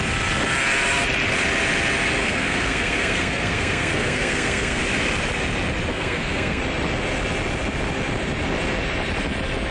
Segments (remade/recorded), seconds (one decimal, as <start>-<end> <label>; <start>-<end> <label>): 0.0-2.2 recorded; 2.2-4.8 remade; 4.8-5.9 recorded; 5.9-6.6 remade; 6.6-9.7 recorded